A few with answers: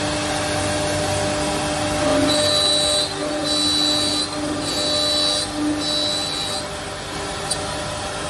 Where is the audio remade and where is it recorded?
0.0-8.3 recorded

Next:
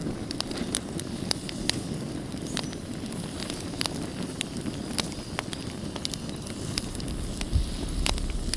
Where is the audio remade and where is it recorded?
0.0-3.4 remade; 3.4-4.1 recorded; 4.1-4.7 remade; 4.7-8.6 recorded

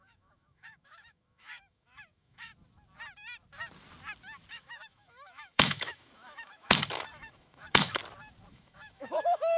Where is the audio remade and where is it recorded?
0.0-2.5 remade; 2.5-4.5 recorded; 4.5-8.0 remade; 8.0-8.5 recorded; 8.5-9.6 remade

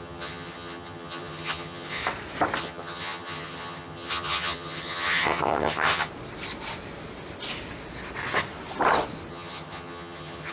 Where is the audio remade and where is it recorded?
0.0-2.0 remade; 2.0-2.6 recorded; 2.6-6.1 remade; 6.1-9.3 recorded; 9.3-10.5 remade

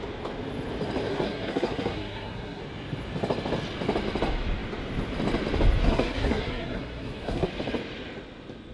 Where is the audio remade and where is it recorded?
0.0-1.1 recorded; 1.1-2.6 remade; 2.6-5.8 recorded; 5.8-7.5 remade; 7.5-8.7 recorded